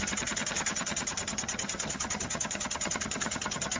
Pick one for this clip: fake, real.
fake